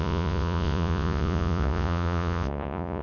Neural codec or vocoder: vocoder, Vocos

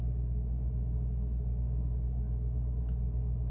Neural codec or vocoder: none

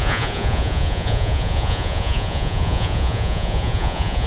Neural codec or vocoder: vocoder, Vocos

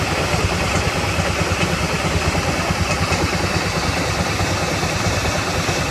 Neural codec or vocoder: none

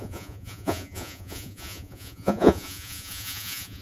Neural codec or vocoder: vocoder, Vocos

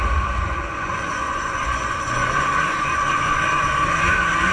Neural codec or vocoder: vocoder, Vocos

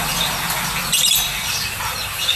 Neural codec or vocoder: none